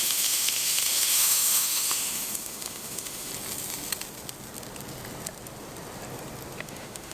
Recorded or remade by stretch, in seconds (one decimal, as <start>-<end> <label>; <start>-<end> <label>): 0.0-3.3 remade; 3.3-6.6 recorded; 6.6-7.1 remade